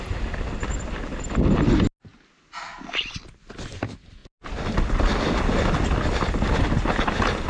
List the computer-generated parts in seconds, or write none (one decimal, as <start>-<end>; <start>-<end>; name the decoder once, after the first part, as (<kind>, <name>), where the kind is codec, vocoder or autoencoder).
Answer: none